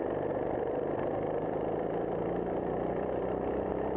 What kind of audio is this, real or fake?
fake